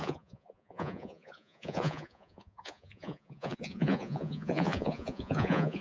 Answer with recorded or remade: remade